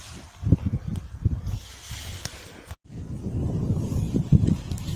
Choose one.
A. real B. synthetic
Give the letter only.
A